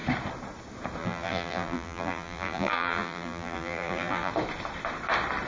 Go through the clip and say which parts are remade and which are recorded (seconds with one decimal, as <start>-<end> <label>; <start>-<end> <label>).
0.0-1.0 recorded; 1.0-4.3 remade; 4.3-5.5 recorded